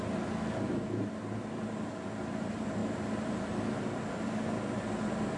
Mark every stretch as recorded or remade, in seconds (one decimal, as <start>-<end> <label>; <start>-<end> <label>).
0.0-5.4 recorded